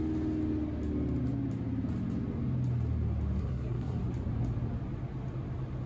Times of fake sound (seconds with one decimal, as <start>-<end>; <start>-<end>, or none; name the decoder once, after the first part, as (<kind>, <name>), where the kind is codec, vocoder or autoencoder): 3.4-4.0 (codec, SNAC)